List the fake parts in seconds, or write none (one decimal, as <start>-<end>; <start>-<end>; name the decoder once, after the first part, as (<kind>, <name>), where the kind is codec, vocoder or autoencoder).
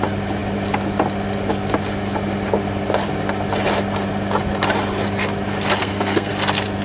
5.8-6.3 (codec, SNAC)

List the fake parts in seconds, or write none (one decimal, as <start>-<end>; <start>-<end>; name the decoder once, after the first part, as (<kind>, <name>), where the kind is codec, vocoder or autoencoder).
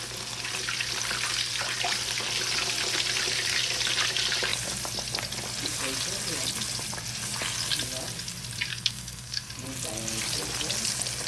8.7-9.5 (codec, SNAC)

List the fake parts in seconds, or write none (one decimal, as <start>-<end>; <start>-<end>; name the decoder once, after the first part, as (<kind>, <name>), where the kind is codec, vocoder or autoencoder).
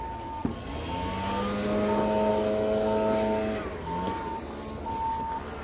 none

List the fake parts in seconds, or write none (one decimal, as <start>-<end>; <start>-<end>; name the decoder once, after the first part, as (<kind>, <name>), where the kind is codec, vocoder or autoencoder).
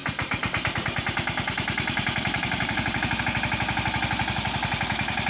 0.0-3.2 (vocoder, BigVGAN v2)